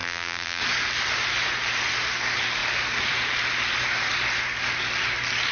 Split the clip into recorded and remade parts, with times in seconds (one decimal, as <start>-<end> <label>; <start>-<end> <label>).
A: 0.0-0.6 remade; 0.6-5.5 recorded